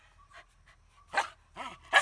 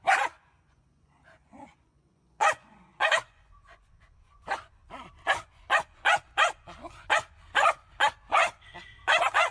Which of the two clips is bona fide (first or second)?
first